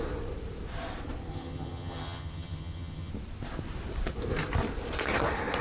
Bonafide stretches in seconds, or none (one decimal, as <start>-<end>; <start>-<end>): 0.0-1.3; 3.1-5.6